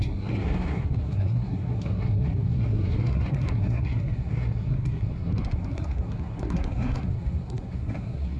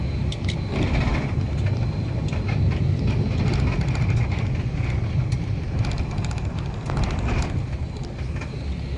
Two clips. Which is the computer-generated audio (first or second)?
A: first